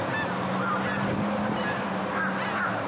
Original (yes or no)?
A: yes